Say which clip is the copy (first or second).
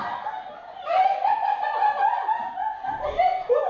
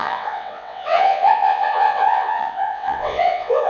second